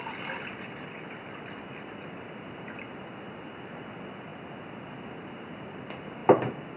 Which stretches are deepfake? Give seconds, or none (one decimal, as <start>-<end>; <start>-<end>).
4.3-4.9; 6.2-6.8